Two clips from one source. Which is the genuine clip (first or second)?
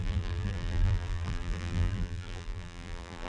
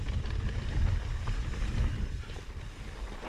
second